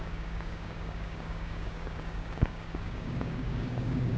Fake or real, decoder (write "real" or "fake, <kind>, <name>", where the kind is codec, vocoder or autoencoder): fake, codec, DAC